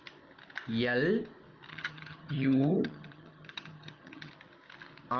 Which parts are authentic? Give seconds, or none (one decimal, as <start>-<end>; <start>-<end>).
0.0-1.7; 4.3-5.2